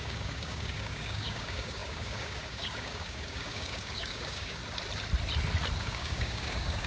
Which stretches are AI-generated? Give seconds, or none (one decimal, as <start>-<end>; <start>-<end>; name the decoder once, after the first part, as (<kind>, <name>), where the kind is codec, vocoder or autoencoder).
0.0-4.6 (codec, DAC); 5.8-6.9